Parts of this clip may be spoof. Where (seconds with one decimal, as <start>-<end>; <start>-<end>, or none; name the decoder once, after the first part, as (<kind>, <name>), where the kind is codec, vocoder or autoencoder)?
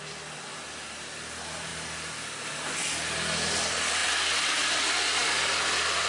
none